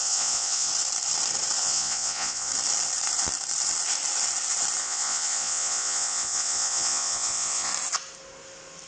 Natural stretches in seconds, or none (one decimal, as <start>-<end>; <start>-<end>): 0.7-1.6; 2.5-4.8; 7.7-8.9